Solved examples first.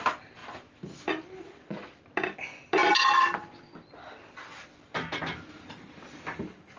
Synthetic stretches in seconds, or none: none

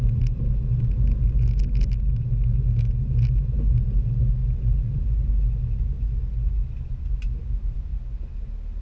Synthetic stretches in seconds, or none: none

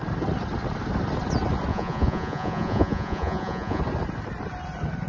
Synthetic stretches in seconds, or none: 1.7-3.8 (vocoder, Vocos)

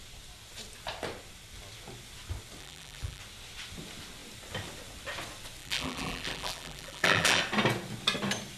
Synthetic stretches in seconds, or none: 2.6-3.2 (vocoder, BigVGAN v2); 5.6-7.4